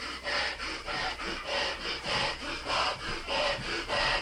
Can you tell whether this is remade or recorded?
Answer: recorded